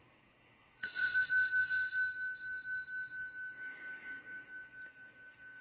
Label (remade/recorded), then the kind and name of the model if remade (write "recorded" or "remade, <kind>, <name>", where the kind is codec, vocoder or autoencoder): remade, codec, DAC